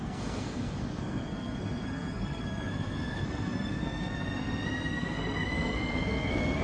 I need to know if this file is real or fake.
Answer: fake